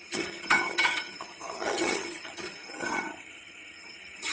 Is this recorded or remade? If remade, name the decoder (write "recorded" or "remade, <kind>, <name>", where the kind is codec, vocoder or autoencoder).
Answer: remade, vocoder, HiFi-GAN